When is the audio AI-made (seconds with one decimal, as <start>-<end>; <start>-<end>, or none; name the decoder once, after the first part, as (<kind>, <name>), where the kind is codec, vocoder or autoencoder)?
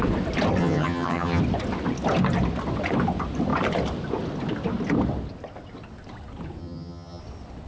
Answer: 0.6-1.4 (vocoder, HiFi-GAN); 6.6-7.2